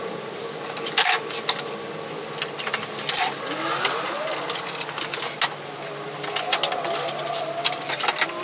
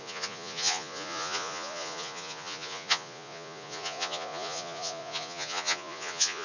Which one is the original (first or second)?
first